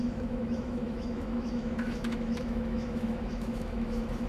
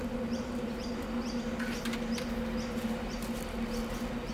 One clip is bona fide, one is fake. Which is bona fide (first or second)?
second